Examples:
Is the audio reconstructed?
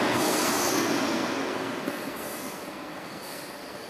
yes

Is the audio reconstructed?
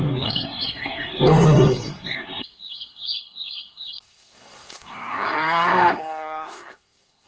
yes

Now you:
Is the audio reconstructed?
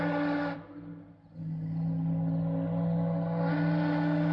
no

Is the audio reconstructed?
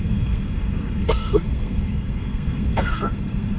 yes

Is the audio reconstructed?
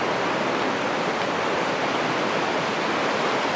no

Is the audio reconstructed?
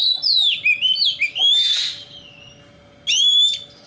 no